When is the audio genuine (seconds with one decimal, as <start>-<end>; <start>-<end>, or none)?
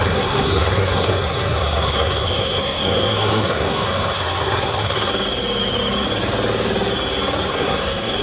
5.1-7.5